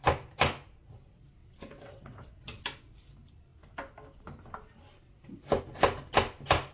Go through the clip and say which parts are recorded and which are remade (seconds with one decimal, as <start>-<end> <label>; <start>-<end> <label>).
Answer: 0.0-1.4 recorded; 1.4-2.6 remade; 2.6-6.7 recorded